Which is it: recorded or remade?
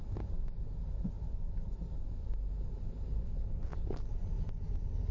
recorded